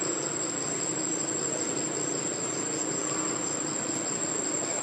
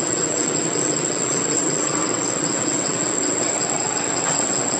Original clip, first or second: first